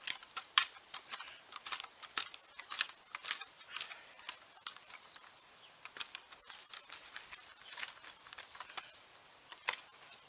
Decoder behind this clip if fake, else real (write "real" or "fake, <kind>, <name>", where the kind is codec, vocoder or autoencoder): real